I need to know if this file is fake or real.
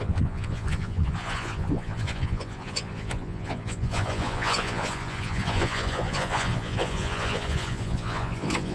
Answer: fake